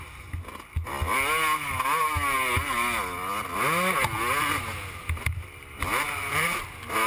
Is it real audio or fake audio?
real